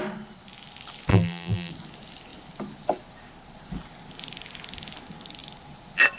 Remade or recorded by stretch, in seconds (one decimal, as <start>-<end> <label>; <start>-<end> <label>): 0.0-1.1 recorded; 1.1-1.7 remade; 1.7-6.2 recorded